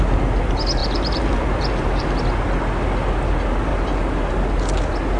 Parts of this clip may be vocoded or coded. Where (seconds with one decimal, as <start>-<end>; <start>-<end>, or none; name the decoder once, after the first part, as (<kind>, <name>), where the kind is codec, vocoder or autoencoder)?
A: 0.8-2.1 (vocoder, BigVGAN v2)